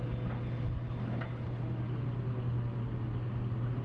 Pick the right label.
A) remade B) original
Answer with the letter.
B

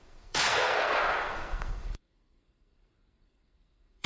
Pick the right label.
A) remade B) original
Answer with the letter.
A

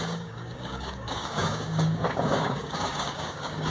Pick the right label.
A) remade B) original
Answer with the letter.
A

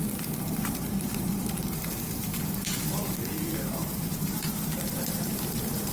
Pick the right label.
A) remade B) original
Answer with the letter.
A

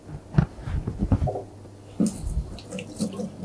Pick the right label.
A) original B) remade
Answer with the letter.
A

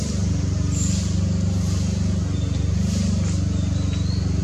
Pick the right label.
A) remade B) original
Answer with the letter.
B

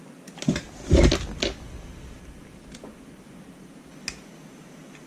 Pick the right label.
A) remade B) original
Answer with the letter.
B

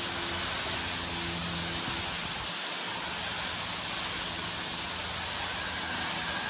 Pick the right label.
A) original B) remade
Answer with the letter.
A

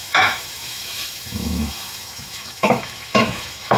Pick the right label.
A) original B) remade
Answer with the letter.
B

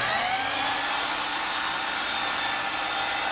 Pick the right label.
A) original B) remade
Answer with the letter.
A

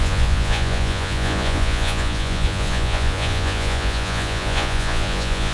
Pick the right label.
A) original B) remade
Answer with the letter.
B